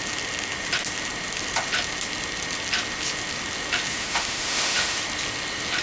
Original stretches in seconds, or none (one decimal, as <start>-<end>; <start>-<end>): 0.0-3.9; 5.0-5.8